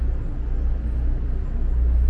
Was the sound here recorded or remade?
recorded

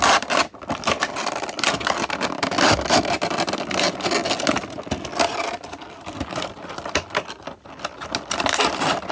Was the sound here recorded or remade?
recorded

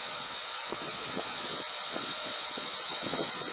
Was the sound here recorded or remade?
remade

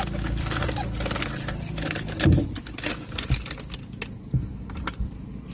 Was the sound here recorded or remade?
recorded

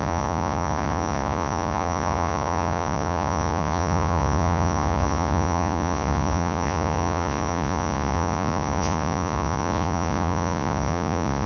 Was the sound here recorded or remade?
remade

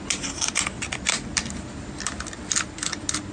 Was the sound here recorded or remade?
recorded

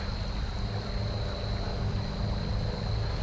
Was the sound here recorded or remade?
recorded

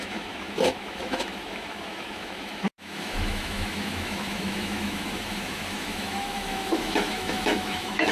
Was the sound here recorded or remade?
remade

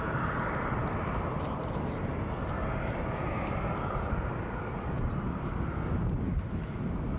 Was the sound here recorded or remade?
recorded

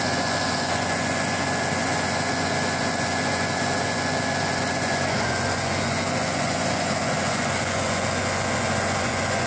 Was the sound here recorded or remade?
remade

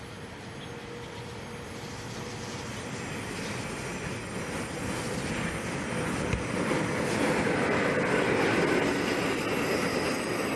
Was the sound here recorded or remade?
recorded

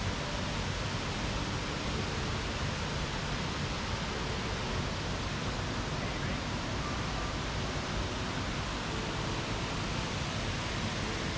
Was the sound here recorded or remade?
recorded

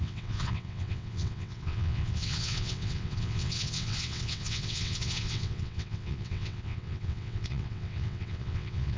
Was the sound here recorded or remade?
remade